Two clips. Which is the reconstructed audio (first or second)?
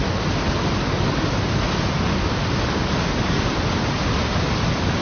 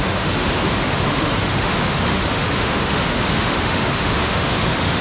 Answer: second